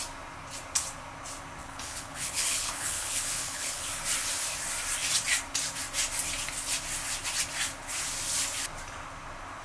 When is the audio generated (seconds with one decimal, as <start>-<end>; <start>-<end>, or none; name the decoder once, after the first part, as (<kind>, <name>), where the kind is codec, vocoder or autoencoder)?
1.6-3.8 (codec, HILCodec)